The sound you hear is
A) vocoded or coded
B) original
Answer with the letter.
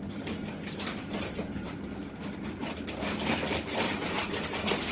B